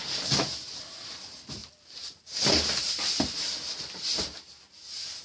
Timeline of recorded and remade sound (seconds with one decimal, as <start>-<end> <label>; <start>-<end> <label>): 0.0-5.2 recorded